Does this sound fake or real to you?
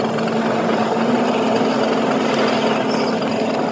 real